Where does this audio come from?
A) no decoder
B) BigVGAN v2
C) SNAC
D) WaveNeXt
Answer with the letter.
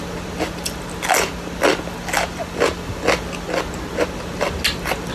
A